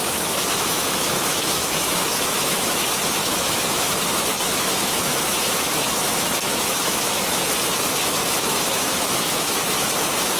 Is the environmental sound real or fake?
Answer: fake